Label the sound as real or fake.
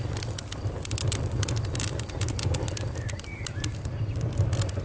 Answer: real